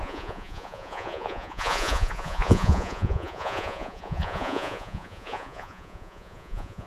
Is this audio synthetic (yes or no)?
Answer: yes